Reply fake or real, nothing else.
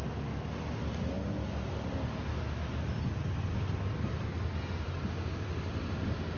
real